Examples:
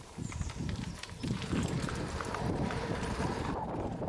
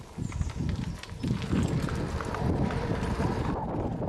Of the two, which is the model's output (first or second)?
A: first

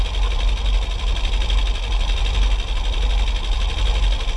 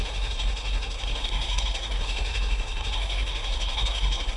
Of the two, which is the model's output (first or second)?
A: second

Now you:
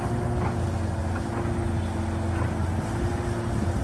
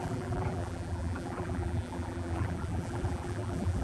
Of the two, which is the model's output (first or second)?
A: second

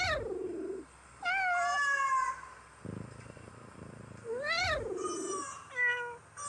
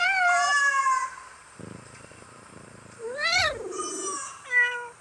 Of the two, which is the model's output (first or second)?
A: second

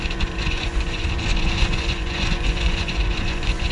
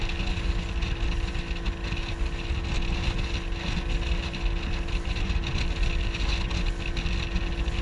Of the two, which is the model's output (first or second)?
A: first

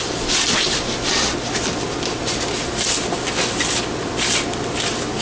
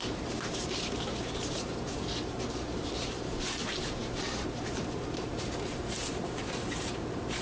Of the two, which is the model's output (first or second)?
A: second